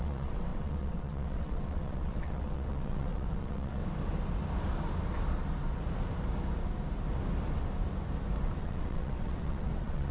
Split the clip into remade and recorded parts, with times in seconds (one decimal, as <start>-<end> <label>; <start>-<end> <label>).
0.0-3.8 remade; 3.8-8.6 recorded; 8.6-10.1 remade

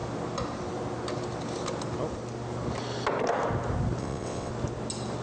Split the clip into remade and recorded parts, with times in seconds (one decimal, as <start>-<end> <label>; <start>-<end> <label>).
0.0-4.0 recorded; 4.0-4.5 remade; 4.5-5.2 recorded

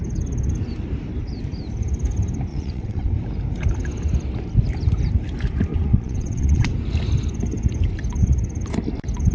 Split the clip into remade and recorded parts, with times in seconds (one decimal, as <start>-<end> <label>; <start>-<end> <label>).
0.0-2.5 recorded; 2.5-3.1 remade; 3.1-5.7 recorded; 5.7-6.7 remade; 6.7-9.3 recorded

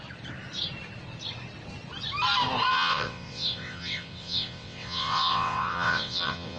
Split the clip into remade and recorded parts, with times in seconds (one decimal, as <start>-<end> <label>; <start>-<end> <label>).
0.0-2.7 recorded; 2.7-6.6 remade

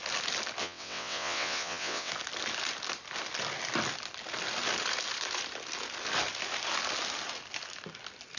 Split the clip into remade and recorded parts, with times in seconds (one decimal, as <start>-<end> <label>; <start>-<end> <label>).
0.0-0.6 recorded; 0.6-2.1 remade; 2.1-8.4 recorded

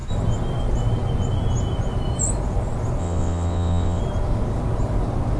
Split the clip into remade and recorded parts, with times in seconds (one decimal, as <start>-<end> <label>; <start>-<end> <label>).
0.0-3.0 recorded; 3.0-4.0 remade; 4.0-5.4 recorded

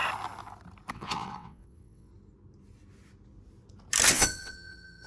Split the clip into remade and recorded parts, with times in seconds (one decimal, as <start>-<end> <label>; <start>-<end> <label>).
0.0-0.9 recorded; 0.9-2.1 remade; 2.1-4.1 recorded; 4.1-5.1 remade